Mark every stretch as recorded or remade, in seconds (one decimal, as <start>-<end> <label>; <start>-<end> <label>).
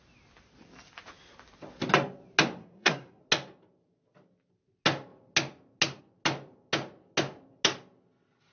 0.0-2.6 recorded; 2.6-3.2 remade; 3.2-8.5 recorded